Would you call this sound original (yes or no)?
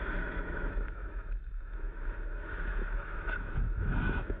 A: no